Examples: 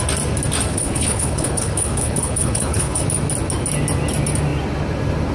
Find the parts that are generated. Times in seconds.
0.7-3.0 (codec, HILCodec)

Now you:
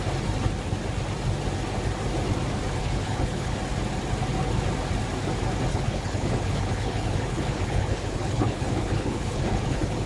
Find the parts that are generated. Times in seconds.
2.8-3.6 (codec, HILCodec); 5.7-10.1

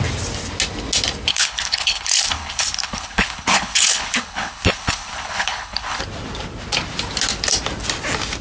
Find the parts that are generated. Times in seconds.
1.3-6.0 (codec, HILCodec)

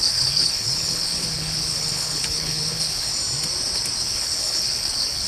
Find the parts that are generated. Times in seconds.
0.0-3.1 (codec, HILCodec); 4.0-5.3

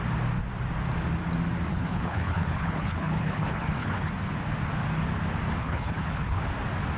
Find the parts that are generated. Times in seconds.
1.7-4.1 (codec, HILCodec); 5.6-6.4

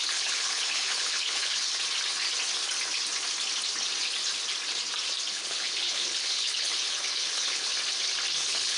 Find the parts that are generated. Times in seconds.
0.0-1.7 (codec, HILCodec); 5.3-7.7; 8.4-8.8